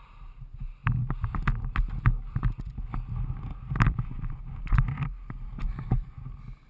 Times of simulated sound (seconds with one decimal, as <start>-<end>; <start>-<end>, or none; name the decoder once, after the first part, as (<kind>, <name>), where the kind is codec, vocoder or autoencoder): 0.0-0.8 (vocoder, BigVGAN v2); 3.8-5.5

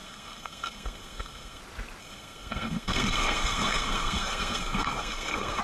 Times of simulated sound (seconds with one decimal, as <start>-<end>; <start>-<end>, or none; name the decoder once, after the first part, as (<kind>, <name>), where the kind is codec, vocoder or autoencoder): 0.0-1.6 (codec, SNAC); 2.0-5.6

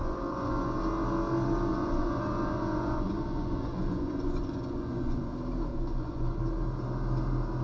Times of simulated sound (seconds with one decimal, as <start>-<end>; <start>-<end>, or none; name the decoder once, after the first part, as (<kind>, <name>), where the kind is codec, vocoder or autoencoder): 0.0-0.8 (vocoder, Vocos); 1.7-5.3; 5.7-6.4

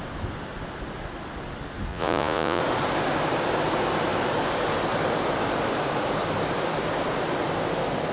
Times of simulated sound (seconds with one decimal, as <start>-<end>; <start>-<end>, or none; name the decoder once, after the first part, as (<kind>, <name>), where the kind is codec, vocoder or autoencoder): 1.9-2.6 (vocoder, Vocos)

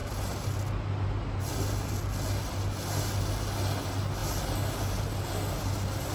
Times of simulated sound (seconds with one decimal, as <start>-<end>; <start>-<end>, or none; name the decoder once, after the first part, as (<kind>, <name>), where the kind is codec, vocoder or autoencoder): none